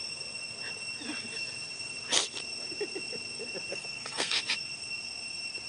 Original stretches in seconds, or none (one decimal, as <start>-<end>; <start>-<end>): 0.0-3.7; 4.4-5.7